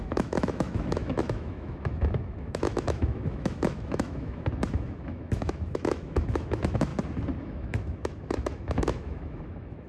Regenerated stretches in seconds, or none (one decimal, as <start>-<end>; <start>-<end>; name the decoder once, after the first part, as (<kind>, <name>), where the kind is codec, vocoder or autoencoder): 0.0-6.9 (autoencoder, DAC-VAE); 7.4-9.9

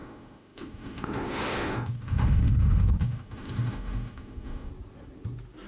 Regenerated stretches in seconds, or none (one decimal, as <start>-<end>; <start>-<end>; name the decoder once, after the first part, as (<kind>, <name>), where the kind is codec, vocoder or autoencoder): 0.0-4.7 (autoencoder, DAC-VAE)

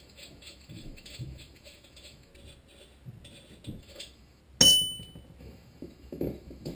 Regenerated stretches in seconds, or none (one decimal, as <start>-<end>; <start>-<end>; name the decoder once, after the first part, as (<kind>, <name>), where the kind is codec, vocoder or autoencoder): 0.0-2.3 (autoencoder, DAC-VAE); 3.8-4.4; 5.4-6.7